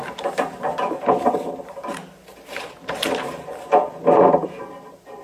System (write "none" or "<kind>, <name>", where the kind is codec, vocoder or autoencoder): none